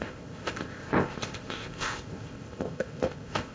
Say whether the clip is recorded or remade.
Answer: remade